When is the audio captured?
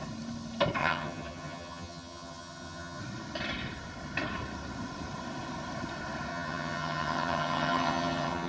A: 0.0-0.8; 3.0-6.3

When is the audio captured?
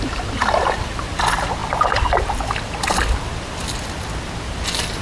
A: 0.0-5.0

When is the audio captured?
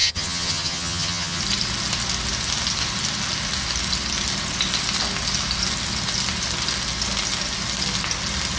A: 1.4-8.6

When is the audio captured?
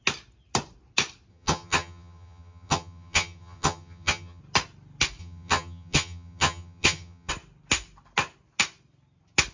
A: 0.0-1.3; 4.4-5.2; 7.3-9.5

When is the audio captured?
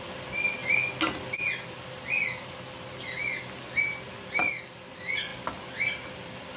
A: 0.0-6.6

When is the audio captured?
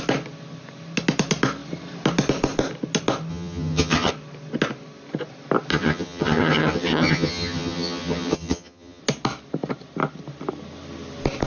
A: 0.0-3.3; 4.1-5.7; 9.0-11.5